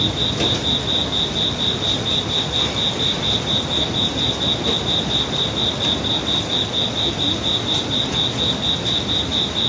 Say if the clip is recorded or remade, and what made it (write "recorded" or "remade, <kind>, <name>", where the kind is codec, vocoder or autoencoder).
recorded